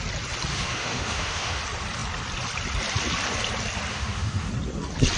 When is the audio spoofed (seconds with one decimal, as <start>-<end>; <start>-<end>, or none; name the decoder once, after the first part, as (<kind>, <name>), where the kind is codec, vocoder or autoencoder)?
0.5-1.6 (autoencoder, DAC-VAE); 3.9-4.5